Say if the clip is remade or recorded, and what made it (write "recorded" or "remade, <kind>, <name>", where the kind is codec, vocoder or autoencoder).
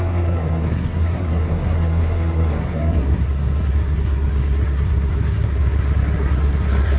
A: remade, codec, SNAC